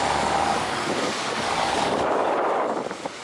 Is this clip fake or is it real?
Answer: fake